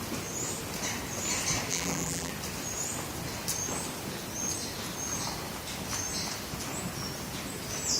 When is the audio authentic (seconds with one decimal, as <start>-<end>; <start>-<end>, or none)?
0.0-1.7; 2.3-8.0